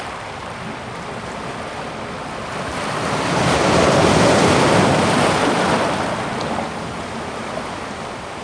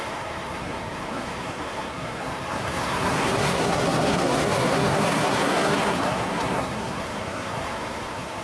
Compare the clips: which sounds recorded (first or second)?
first